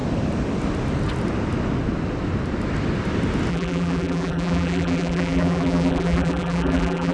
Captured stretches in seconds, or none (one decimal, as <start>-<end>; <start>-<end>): 0.0-3.5